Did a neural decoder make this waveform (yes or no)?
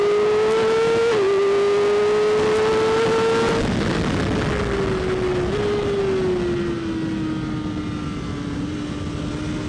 no